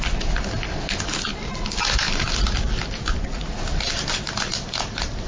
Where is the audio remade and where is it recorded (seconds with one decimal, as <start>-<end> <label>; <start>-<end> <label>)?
0.0-1.3 recorded; 1.3-2.7 remade; 2.7-5.3 recorded